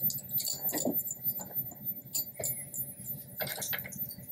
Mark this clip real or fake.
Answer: real